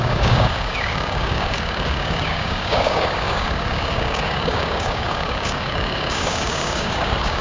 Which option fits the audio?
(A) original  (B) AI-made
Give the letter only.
B